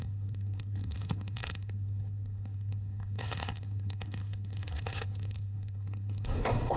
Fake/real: fake